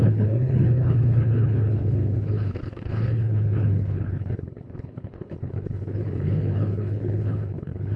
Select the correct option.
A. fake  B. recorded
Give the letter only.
A